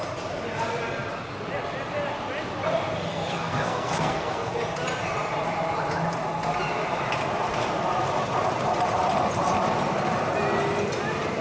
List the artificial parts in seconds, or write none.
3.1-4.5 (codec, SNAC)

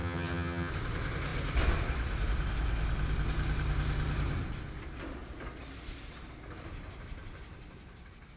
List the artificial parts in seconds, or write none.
0.0-0.7 (vocoder, HiFi-GAN)